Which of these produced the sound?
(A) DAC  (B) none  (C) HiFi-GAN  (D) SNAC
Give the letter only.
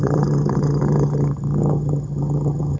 C